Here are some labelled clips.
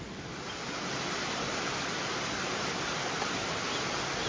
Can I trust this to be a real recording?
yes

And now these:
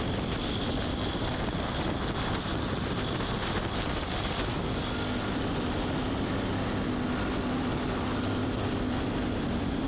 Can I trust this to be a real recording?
yes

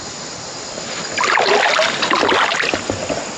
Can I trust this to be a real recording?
yes